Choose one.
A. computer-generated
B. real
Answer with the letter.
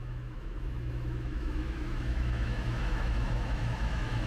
A